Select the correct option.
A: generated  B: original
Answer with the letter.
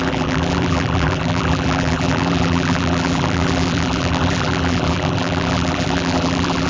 A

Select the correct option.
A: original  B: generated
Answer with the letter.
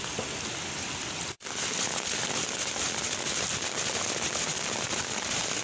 A